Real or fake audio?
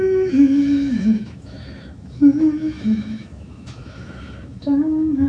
fake